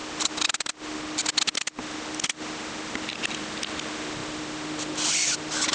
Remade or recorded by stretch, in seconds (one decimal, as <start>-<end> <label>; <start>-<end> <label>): 0.0-5.7 recorded